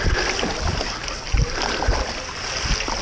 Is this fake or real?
real